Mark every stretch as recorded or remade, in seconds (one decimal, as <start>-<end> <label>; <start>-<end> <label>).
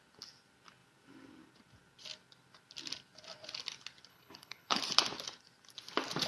0.0-4.1 recorded; 4.1-4.8 remade; 4.8-6.3 recorded